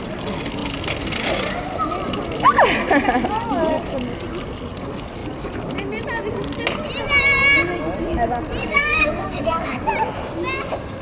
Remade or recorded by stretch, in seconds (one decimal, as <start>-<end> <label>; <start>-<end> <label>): 0.0-8.6 recorded; 8.6-9.8 remade; 9.8-11.0 recorded